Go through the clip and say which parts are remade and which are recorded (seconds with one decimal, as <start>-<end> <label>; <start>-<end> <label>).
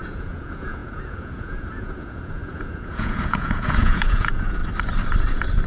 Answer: 0.0-4.6 remade; 4.6-5.7 recorded